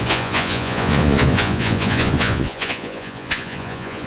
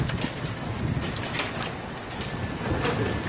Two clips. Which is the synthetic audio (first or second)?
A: first